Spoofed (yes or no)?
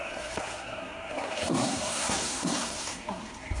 yes